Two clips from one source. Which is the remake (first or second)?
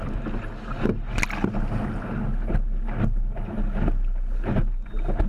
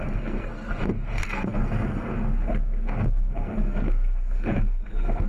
second